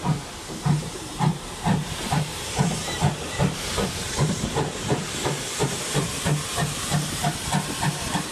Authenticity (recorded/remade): remade